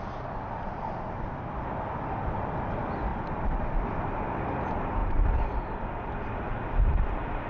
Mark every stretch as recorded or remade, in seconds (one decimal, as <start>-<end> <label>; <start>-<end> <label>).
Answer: 0.0-5.0 recorded; 5.0-5.9 remade; 5.9-7.5 recorded